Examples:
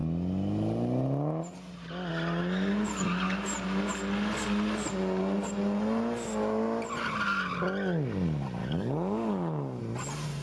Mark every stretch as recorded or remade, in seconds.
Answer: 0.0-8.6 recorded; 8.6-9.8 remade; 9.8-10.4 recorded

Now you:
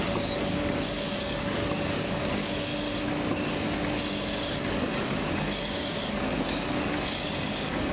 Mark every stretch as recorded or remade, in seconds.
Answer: 0.0-2.7 remade; 2.7-4.7 recorded; 4.7-7.9 remade

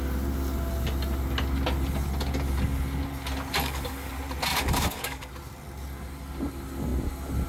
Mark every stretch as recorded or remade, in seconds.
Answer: 0.0-3.6 recorded; 3.6-4.1 remade; 4.1-4.5 recorded; 4.5-5.3 remade; 5.3-7.5 recorded